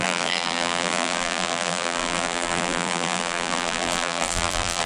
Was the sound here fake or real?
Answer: fake